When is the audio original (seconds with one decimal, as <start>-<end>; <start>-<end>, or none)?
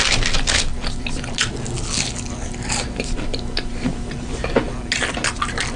0.0-5.8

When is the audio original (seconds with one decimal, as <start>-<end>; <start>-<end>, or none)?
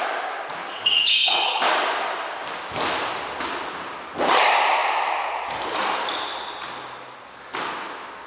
0.0-0.6; 1.7-8.3